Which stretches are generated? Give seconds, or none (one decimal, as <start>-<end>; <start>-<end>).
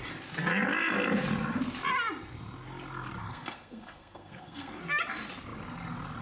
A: 3.2-4.8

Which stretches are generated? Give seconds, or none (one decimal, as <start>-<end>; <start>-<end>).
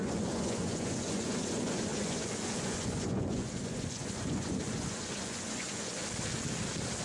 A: 0.0-6.0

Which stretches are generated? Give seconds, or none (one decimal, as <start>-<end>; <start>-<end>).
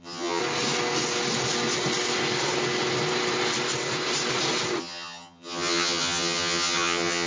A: 0.0-0.4; 4.8-7.3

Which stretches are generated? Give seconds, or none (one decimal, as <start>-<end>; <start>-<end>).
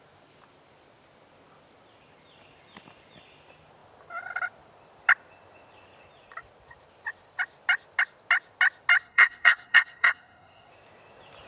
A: 9.0-10.7